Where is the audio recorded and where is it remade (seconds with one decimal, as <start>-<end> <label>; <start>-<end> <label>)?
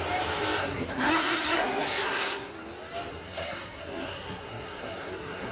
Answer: 0.0-0.6 recorded; 0.6-2.5 remade; 2.5-3.1 recorded; 3.1-5.5 remade